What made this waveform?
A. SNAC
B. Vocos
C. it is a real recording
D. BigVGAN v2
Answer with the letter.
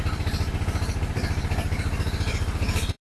D